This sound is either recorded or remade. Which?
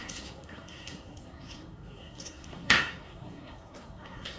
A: remade